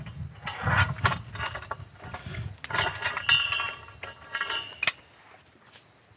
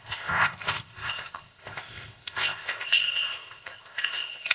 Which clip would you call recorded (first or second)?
first